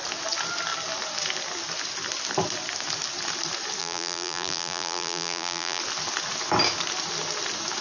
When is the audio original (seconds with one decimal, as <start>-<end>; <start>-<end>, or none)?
0.0-3.8; 5.8-7.8

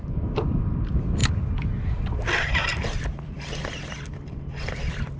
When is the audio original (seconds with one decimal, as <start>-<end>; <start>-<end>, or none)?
1.2-1.9

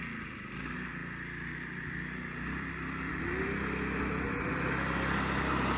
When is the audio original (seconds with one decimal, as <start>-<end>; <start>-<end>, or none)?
0.0-5.8

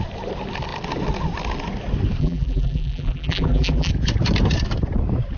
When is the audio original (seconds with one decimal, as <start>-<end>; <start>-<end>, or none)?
0.0-2.2; 3.9-5.4

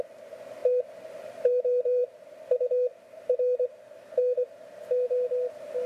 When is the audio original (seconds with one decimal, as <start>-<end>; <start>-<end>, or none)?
0.6-1.2; 2.0-5.5

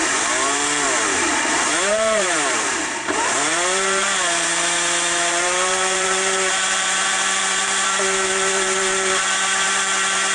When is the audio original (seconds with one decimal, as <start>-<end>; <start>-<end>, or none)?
none

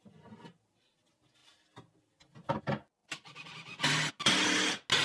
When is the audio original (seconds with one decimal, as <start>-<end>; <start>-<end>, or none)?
0.0-3.0; 4.1-5.0